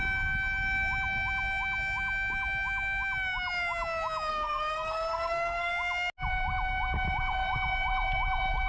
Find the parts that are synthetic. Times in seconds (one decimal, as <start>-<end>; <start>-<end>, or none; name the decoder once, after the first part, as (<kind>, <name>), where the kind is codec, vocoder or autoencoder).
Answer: 4.3-5.7 (codec, SNAC)